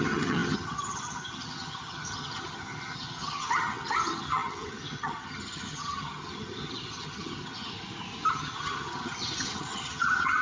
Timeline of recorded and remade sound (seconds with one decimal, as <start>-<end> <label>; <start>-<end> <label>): 0.0-7.7 remade; 7.7-8.3 recorded; 8.3-10.4 remade